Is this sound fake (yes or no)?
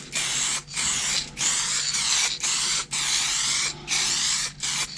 no